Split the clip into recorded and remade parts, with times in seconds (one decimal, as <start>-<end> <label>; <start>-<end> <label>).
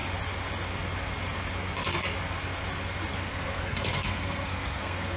0.0-3.2 recorded; 3.2-5.2 remade